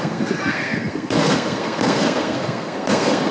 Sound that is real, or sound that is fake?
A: fake